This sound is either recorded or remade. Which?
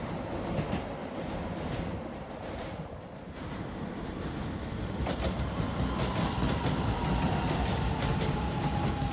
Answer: recorded